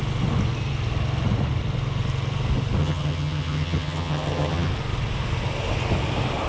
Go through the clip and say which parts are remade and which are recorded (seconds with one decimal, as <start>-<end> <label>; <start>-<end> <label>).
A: 0.0-2.8 recorded; 2.8-4.7 remade; 4.7-6.5 recorded